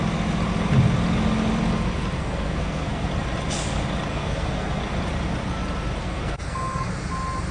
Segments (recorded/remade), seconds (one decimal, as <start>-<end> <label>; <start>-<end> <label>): 0.0-2.2 recorded; 2.2-3.1 remade; 3.1-4.1 recorded; 4.1-4.8 remade; 4.8-6.0 recorded; 6.0-6.9 remade; 6.9-7.5 recorded